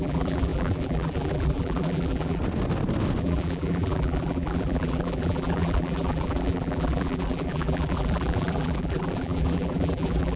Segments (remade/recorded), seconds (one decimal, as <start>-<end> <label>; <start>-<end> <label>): 0.0-2.4 remade; 2.4-3.2 recorded; 3.2-10.4 remade